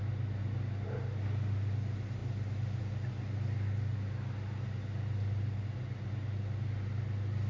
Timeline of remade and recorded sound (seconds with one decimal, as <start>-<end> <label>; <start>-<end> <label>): 0.0-7.5 recorded